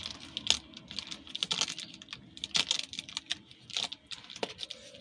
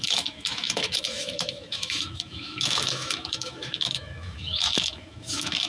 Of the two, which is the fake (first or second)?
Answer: second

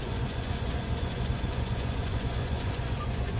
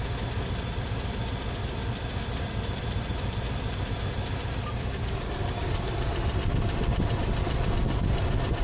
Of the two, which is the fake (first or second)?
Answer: first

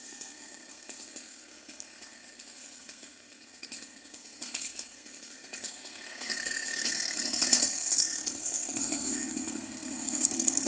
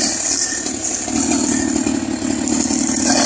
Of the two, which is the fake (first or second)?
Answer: first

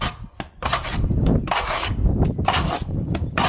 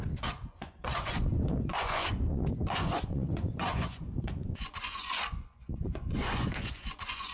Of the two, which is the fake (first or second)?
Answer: second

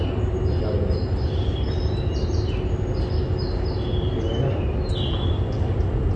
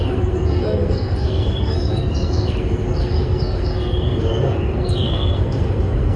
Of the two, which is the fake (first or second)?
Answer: second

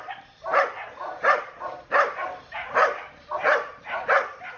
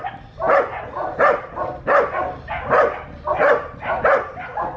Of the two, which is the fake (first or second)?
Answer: first